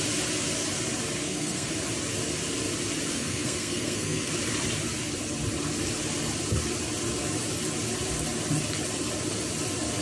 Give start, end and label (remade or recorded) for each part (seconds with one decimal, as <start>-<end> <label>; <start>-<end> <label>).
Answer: 0.0-1.2 recorded; 1.2-1.7 remade; 1.7-3.1 recorded; 3.1-4.3 remade; 4.3-10.0 recorded